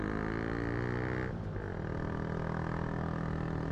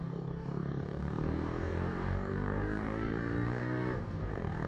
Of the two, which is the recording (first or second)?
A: first